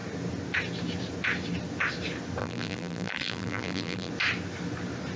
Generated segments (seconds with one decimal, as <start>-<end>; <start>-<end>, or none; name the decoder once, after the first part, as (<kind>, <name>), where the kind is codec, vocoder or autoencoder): 2.4-4.1 (vocoder, BigVGAN v2)